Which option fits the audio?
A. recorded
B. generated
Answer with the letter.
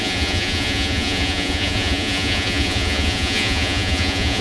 B